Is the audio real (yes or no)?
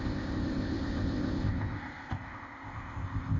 no